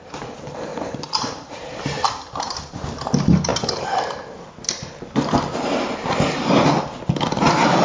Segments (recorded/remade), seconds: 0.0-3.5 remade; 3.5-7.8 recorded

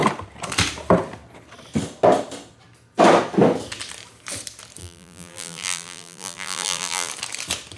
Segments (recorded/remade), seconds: 0.0-4.8 recorded; 4.8-7.1 remade; 7.1-7.8 recorded

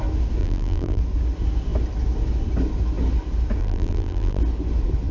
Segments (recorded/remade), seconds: 0.0-0.4 recorded; 0.4-1.0 remade; 1.0-3.6 recorded; 3.6-4.4 remade; 4.4-5.1 recorded

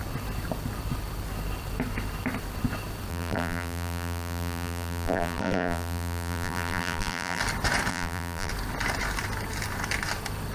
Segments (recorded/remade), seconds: 0.0-3.1 recorded; 3.1-7.4 remade; 7.4-7.9 recorded; 7.9-8.5 remade; 8.5-10.5 recorded

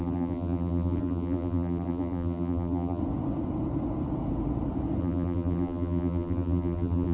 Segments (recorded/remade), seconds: 0.0-3.0 remade; 3.0-5.0 recorded; 5.0-7.1 remade